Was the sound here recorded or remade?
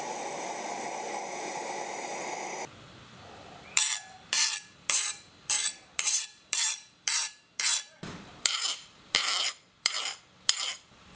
remade